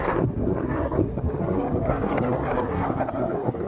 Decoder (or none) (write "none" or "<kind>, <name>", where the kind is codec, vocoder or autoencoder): codec, SNAC